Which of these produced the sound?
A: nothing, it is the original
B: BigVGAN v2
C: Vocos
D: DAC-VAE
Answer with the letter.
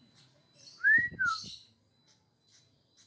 B